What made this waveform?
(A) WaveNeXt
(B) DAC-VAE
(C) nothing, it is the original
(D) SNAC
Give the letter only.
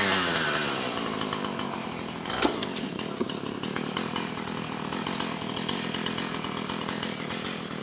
C